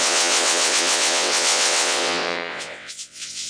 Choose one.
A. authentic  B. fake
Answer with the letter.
B